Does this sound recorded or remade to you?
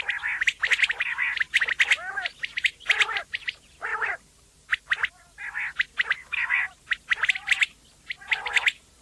recorded